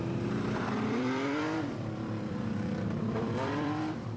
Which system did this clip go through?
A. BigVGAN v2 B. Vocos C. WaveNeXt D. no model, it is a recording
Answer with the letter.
A